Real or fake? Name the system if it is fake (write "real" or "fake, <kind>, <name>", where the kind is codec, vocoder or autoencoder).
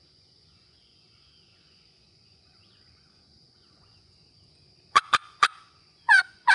fake, vocoder, Vocos